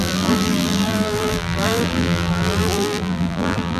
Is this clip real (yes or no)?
no